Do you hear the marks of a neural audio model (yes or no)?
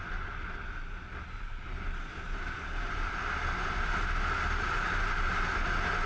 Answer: no